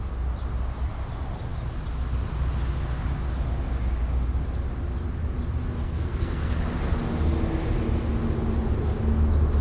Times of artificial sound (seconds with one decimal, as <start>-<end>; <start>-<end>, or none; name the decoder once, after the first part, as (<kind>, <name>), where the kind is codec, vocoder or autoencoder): 5.8-6.5 (codec, SNAC)